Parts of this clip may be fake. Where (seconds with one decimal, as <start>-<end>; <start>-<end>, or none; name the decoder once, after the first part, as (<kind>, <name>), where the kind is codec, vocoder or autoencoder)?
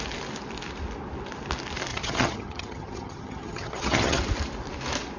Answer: 1.9-4.2 (vocoder, HiFi-GAN)